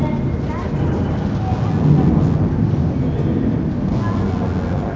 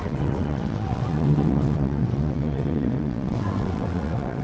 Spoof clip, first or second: second